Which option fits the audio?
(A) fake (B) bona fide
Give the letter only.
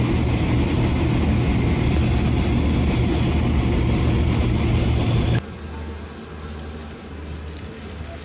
B